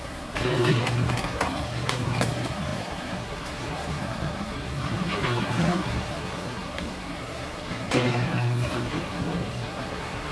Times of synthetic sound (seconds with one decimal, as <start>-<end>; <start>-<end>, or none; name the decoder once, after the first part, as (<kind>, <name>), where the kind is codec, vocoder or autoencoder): 0.0-10.3 (codec, SNAC)